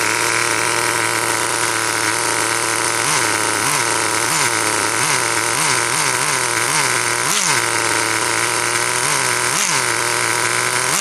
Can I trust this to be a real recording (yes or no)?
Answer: yes